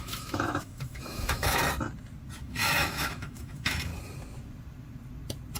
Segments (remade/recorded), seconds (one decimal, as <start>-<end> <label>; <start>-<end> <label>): 0.0-1.6 remade; 1.6-2.4 recorded; 2.4-3.9 remade; 3.9-5.6 recorded